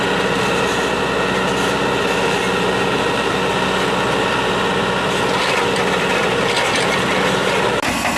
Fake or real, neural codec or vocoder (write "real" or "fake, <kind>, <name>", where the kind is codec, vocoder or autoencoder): real